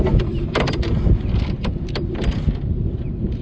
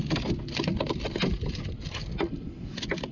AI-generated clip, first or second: first